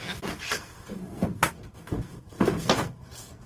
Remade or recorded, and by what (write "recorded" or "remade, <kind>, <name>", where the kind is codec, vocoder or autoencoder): remade, codec, SNAC